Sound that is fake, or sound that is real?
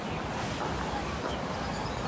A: real